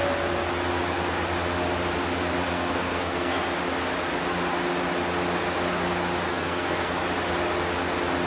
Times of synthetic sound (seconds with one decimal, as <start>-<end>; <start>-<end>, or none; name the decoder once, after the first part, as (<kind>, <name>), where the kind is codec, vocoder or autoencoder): 2.5-3.4 (codec, SNAC); 6.3-7.0